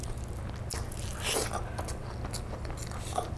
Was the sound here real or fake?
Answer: real